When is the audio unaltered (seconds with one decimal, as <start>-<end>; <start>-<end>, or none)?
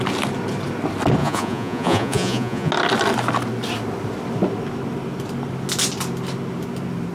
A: 0.0-1.2; 2.7-7.1